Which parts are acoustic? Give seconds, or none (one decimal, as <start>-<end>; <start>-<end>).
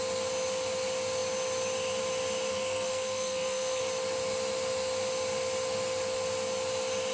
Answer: 0.0-2.5; 3.8-7.1